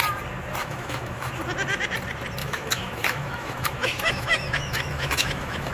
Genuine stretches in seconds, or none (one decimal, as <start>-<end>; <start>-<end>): 0.0-0.6; 1.3-2.4

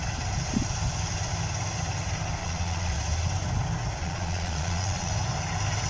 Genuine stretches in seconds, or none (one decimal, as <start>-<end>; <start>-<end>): 0.0-2.4; 2.9-4.0; 5.1-5.9

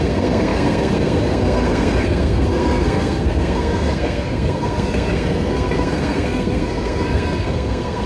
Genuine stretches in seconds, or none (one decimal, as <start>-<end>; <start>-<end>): none

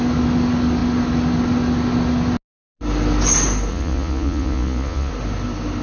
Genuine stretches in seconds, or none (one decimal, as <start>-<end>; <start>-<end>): 0.0-3.7; 5.1-5.8

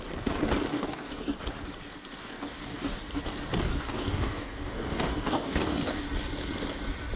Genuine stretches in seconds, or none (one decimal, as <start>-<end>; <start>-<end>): 0.0-0.7; 1.4-2.2; 3.0-3.7; 6.0-7.2

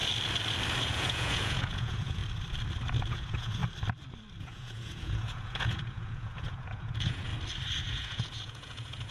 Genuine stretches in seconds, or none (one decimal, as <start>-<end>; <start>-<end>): 0.0-0.8; 2.2-3.1; 3.6-4.4; 7.3-7.8

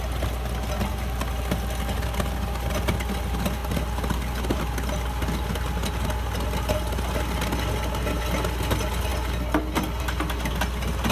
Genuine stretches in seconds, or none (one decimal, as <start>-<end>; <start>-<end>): 0.0-11.1